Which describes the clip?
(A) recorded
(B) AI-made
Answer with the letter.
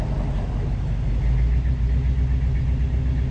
A